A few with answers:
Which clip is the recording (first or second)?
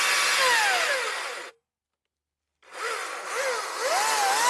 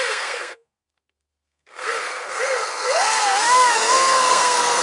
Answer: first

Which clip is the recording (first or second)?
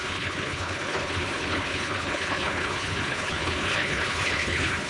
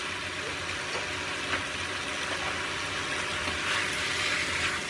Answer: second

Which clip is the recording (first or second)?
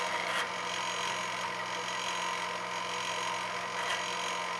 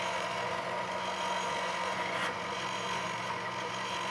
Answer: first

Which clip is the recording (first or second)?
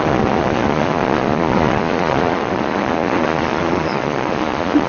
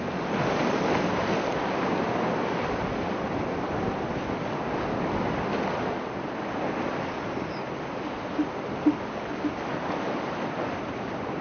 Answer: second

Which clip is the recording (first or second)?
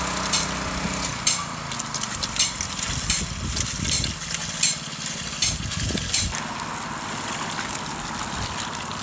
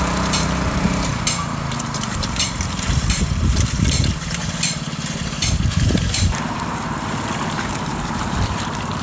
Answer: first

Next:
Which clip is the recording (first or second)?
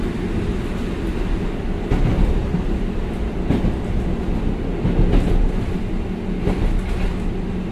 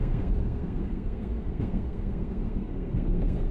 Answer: first